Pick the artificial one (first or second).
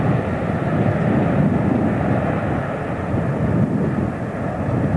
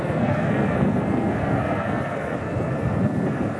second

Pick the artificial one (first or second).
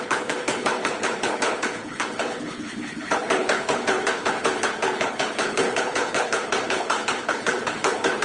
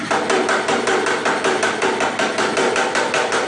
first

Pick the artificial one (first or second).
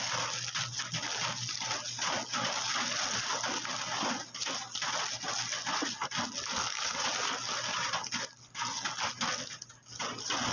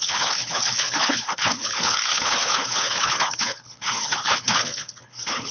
second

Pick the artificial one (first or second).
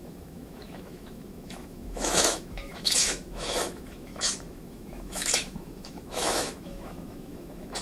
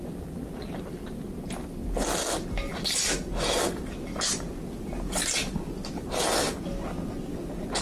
first